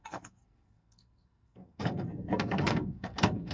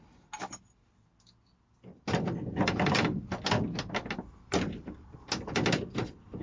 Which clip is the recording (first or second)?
second